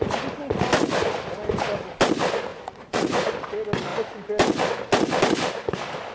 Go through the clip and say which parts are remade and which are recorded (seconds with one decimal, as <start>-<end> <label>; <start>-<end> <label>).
0.0-2.5 recorded; 2.5-3.3 remade; 3.3-6.1 recorded